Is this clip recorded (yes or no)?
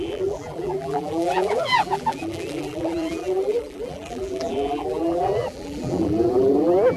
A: no